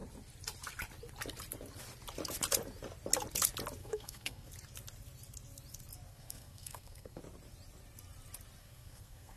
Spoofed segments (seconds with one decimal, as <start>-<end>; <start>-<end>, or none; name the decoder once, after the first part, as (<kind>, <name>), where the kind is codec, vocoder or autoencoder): 3.8-4.5 (codec, SNAC); 6.1-7.2; 8.6-9.4

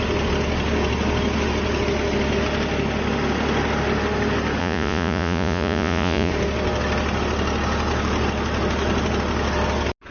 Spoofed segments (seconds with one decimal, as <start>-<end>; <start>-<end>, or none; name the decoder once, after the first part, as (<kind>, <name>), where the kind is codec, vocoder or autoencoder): 4.6-6.3 (vocoder, Vocos)

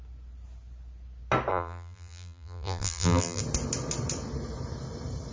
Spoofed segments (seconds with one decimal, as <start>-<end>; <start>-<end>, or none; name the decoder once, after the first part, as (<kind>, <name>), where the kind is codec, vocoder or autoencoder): 1.5-3.4 (vocoder, BigVGAN v2)

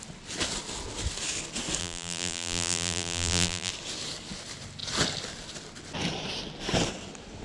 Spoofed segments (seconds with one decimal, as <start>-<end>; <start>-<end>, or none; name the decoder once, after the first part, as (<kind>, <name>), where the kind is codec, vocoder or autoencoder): 1.8-3.7 (vocoder, BigVGAN v2)

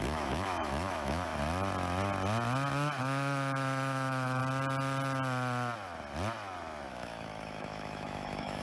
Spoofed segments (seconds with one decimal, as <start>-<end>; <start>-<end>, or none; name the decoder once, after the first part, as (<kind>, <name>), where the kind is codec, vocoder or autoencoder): 0.0-1.3 (autoencoder, DAC-VAE); 3.0-4.4; 6.9-8.6

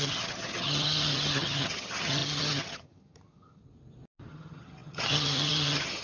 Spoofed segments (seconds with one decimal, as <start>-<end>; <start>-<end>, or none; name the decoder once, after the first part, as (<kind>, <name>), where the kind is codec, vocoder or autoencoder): 0.0-3.6 (vocoder, HiFi-GAN); 4.3-6.0

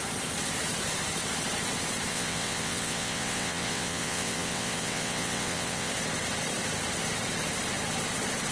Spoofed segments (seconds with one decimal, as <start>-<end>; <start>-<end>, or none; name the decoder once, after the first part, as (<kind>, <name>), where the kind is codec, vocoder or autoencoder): 2.1-5.9 (vocoder, WaveNeXt)

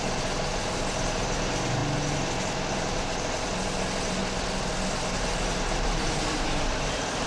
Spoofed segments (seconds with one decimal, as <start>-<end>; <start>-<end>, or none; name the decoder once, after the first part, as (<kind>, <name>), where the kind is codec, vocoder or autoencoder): 0.0-1.8 (vocoder, BigVGAN v2); 2.7-4.2; 4.9-7.3